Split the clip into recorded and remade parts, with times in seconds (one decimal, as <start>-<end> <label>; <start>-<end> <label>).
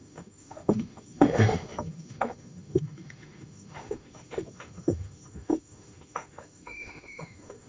0.0-7.7 remade